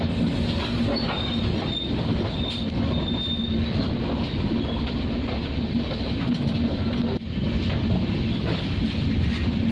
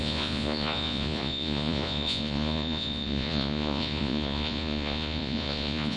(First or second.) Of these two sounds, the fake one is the second